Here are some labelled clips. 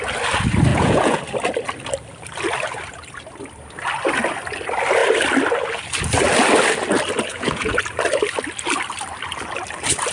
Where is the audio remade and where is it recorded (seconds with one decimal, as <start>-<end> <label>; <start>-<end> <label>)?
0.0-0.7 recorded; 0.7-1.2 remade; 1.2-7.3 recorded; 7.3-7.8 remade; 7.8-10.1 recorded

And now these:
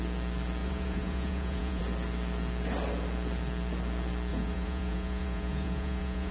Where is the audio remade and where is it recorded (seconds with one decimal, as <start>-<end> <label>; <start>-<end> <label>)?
0.0-0.6 recorded; 0.6-1.8 remade; 1.8-4.3 recorded; 4.3-6.3 remade

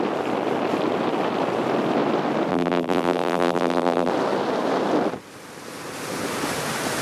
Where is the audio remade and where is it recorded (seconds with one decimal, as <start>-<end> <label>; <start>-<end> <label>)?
0.0-2.5 recorded; 2.5-4.1 remade; 4.1-7.0 recorded

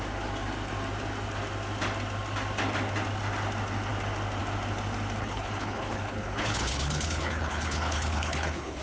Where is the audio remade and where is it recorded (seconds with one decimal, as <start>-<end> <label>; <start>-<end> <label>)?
0.0-5.2 recorded; 5.2-8.8 remade

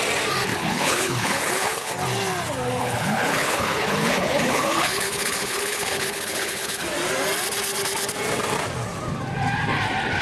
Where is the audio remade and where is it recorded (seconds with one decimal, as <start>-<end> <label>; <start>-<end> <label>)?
0.0-0.5 recorded; 0.5-1.9 remade; 1.9-2.8 recorded; 2.8-6.8 remade; 6.8-10.2 recorded